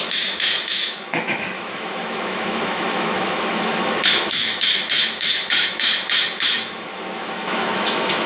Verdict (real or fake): fake